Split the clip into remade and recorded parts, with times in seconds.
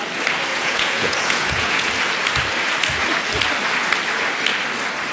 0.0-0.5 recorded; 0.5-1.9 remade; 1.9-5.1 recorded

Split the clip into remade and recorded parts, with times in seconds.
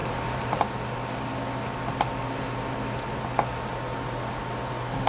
0.0-0.6 remade; 0.6-5.1 recorded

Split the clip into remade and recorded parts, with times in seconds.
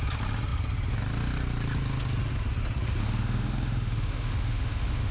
0.0-3.0 recorded; 3.0-5.1 remade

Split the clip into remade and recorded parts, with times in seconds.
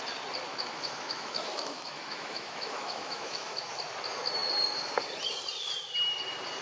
0.0-0.5 recorded; 0.5-3.7 remade; 3.7-6.6 recorded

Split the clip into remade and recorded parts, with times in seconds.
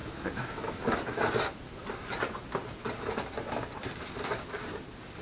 0.0-1.2 remade; 1.2-5.2 recorded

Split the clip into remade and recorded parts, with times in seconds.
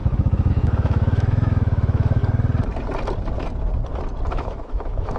0.0-2.2 remade; 2.2-4.3 recorded; 4.3-5.2 remade